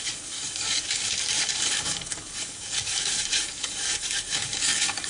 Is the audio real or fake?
fake